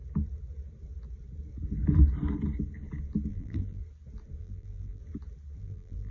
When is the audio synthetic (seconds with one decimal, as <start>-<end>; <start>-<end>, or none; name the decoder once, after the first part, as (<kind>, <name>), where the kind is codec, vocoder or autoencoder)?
3.3-3.8 (vocoder, BigVGAN v2); 4.4-5.0; 5.6-6.1